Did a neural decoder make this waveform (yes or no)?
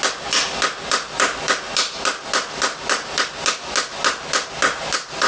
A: no